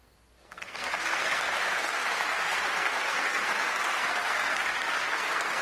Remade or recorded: remade